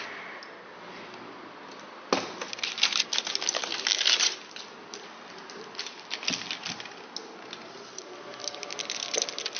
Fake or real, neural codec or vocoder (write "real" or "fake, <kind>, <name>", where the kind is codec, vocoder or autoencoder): real